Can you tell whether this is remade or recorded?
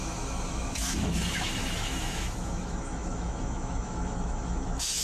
remade